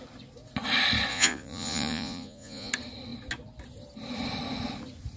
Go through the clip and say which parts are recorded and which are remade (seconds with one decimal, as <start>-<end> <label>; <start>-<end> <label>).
0.0-1.1 recorded; 1.1-2.7 remade; 2.7-5.2 recorded